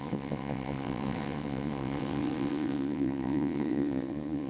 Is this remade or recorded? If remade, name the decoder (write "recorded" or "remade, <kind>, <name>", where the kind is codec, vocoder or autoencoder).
remade, vocoder, WaveNeXt